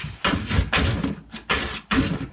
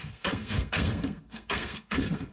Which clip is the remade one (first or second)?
second